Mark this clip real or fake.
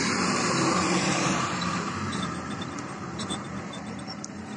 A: fake